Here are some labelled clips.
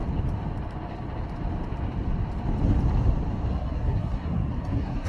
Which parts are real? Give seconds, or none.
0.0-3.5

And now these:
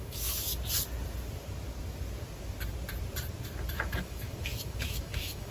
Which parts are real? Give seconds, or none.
0.5-3.7

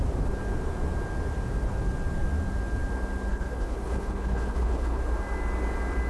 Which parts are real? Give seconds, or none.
0.0-3.3; 5.0-6.1

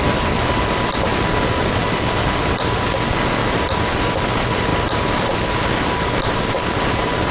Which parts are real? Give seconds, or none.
0.0-7.3

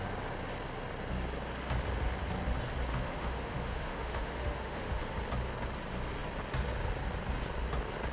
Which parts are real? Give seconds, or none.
0.0-2.9; 5.0-8.1

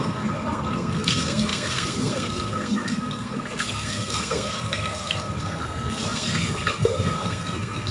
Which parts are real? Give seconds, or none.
none